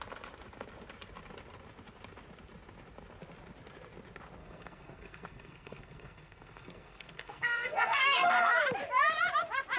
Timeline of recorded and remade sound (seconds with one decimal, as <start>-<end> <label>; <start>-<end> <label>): 0.0-4.4 recorded; 4.4-8.6 remade; 8.6-9.8 recorded